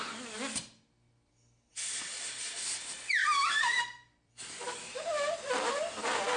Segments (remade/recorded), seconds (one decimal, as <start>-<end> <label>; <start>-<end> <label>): 0.0-1.7 recorded; 1.7-5.5 remade; 5.5-6.4 recorded